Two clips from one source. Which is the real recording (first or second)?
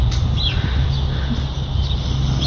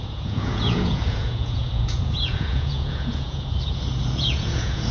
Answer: first